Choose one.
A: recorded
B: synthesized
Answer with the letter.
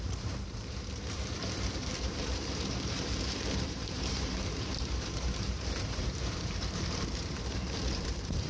B